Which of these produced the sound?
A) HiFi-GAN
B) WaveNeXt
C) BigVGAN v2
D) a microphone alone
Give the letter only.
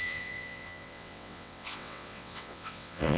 B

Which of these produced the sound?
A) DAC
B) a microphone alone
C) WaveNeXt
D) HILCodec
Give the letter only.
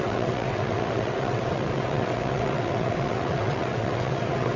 C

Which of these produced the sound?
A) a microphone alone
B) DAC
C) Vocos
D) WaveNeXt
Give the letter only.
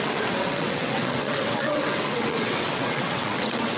D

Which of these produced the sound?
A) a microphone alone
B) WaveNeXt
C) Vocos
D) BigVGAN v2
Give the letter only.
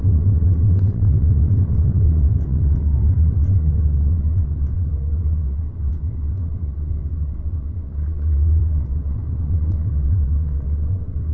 B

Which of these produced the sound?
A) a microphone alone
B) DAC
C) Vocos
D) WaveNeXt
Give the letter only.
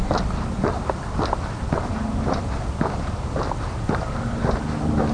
A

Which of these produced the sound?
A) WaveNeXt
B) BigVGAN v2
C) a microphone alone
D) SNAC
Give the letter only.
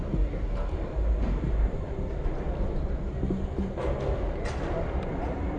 C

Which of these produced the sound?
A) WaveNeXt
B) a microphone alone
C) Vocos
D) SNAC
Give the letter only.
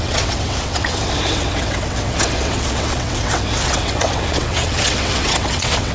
A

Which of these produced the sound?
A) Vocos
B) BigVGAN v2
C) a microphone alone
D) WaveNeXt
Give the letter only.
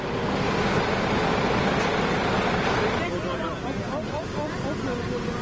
C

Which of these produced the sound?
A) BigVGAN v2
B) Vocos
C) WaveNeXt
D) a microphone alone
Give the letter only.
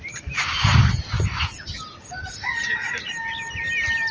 D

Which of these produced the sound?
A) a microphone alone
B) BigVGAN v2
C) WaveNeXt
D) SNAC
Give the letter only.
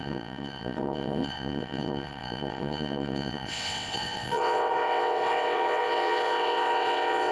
C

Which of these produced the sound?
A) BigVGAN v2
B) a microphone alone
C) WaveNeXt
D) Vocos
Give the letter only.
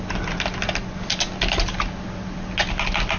B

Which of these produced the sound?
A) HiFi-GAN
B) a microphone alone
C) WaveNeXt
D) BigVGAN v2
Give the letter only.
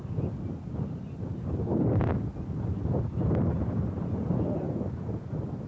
B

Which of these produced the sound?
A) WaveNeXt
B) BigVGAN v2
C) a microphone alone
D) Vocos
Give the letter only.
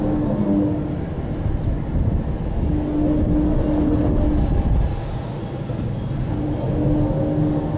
C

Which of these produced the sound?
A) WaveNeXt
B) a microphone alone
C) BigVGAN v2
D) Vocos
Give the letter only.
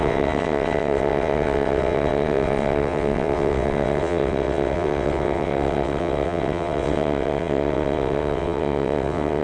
A